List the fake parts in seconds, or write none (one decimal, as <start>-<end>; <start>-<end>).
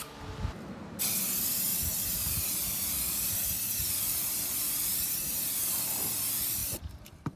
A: 1.7-5.6; 6.6-7.4